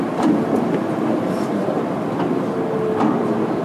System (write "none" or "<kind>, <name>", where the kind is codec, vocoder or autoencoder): vocoder, BigVGAN v2